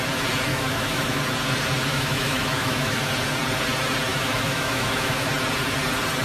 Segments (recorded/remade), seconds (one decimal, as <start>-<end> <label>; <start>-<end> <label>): 0.0-0.5 recorded; 0.5-1.2 remade; 1.2-1.9 recorded; 1.9-3.1 remade; 3.1-4.1 recorded; 4.1-5.3 remade; 5.3-6.2 recorded